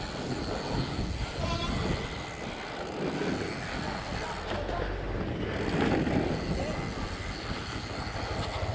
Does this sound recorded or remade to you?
recorded